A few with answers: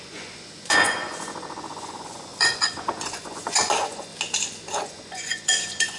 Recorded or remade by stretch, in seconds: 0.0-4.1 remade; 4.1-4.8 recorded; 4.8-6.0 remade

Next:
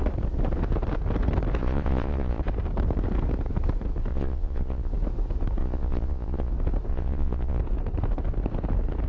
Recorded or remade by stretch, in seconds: 0.0-1.6 recorded; 1.6-2.4 remade; 2.4-4.1 recorded; 4.1-4.9 remade; 4.9-5.6 recorded; 5.6-6.5 remade; 6.5-6.9 recorded; 6.9-7.6 remade; 7.6-9.1 recorded

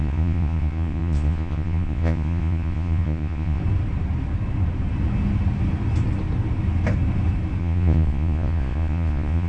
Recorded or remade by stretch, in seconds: 0.0-3.6 remade; 3.6-7.6 recorded; 7.6-9.5 remade

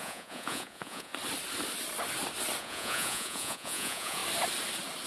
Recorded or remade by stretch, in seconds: 0.0-1.1 remade; 1.1-2.6 recorded; 2.6-4.2 remade; 4.2-5.1 recorded

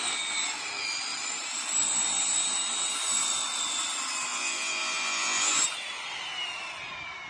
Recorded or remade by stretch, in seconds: 0.0-4.3 recorded; 4.3-5.6 remade; 5.6-7.3 recorded

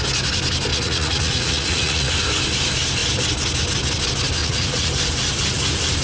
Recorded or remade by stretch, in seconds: 0.0-0.7 recorded; 0.7-2.1 remade; 2.1-4.4 recorded; 4.4-4.9 remade; 4.9-6.0 recorded